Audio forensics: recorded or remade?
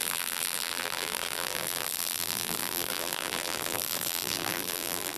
remade